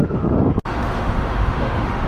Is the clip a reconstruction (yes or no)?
yes